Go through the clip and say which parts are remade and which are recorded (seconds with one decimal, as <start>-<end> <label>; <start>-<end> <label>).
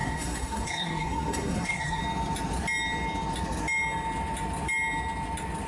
0.0-2.0 remade; 2.0-5.7 recorded